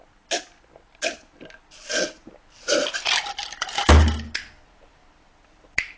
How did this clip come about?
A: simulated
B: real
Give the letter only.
B